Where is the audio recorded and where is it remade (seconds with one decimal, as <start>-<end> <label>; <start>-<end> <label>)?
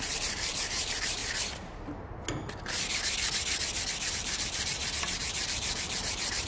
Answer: 0.0-1.2 remade; 1.2-4.1 recorded; 4.1-6.5 remade